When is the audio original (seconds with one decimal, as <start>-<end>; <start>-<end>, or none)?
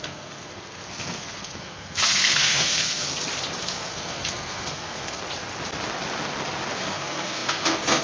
3.1-3.6; 5.2-6.8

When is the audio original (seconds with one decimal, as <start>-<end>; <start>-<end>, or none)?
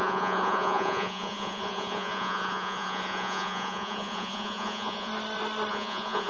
5.1-5.7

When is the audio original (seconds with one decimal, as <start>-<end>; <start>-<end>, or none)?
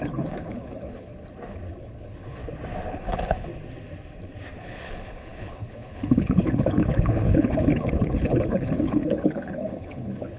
1.1-1.8; 2.4-2.9; 3.5-4.6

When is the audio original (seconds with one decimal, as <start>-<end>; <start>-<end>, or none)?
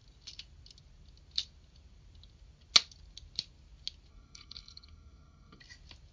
0.0-4.1; 5.6-6.1